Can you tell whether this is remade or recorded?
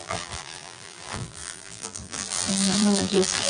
remade